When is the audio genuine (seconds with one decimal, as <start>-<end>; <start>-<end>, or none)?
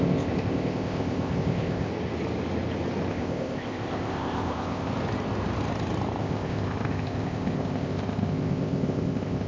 1.9-3.1; 4.9-6.2